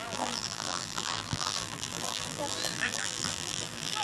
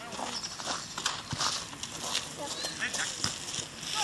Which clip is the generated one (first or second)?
first